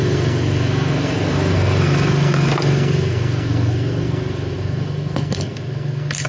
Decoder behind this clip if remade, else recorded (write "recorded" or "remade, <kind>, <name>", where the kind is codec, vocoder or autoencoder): remade, codec, SNAC